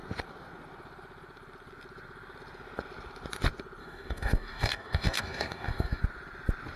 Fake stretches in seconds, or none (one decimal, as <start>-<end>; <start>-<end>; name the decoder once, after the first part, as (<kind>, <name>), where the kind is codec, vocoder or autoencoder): 3.8-6.0 (codec, DAC)